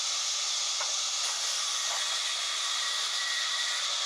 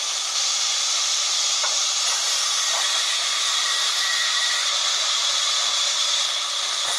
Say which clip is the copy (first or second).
second